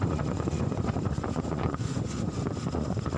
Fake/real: fake